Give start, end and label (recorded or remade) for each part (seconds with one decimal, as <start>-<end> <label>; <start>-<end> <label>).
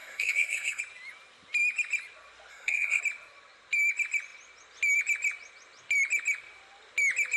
0.0-0.8 remade; 0.8-2.5 recorded; 2.5-3.0 remade; 3.0-7.4 recorded